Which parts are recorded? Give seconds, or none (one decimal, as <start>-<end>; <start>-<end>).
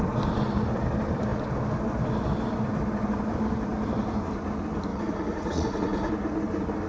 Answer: 0.0-4.9; 6.1-6.9